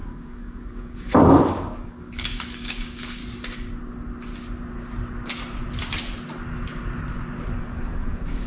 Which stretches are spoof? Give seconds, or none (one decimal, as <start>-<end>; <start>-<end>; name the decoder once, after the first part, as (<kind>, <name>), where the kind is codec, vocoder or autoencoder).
0.0-3.2 (codec, DAC); 7.6-8.5